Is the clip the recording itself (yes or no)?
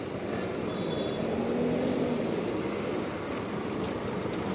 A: yes